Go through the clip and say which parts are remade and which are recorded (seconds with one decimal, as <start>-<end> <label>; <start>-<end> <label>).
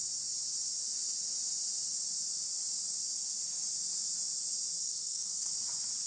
0.0-4.8 recorded; 4.8-5.5 remade; 5.5-6.1 recorded